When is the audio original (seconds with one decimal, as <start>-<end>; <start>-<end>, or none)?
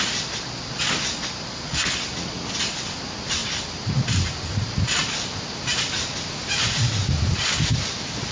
0.0-8.3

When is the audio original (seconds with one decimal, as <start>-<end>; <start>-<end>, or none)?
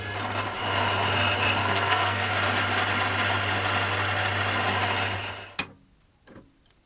0.0-1.6; 2.3-6.9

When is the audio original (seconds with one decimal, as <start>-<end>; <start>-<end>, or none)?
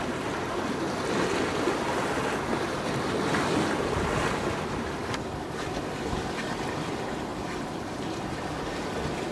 0.0-9.3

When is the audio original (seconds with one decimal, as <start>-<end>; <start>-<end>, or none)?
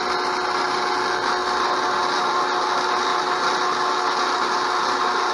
0.0-5.3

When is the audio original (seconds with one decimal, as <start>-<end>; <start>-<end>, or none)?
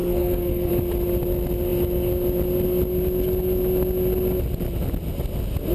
0.7-5.7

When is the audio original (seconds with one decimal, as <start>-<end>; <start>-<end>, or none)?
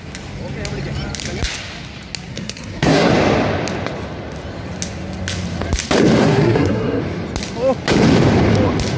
0.0-2.3; 3.1-6.2; 7.0-9.0